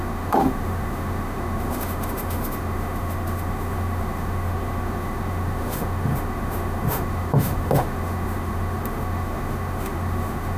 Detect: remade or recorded remade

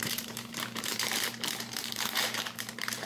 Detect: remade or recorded remade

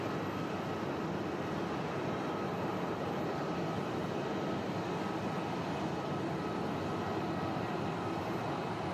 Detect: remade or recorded recorded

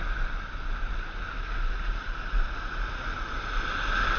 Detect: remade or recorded recorded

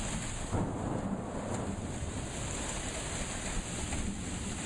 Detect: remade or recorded recorded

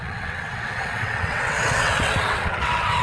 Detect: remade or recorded remade